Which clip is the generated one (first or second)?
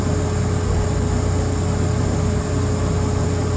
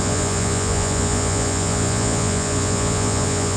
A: second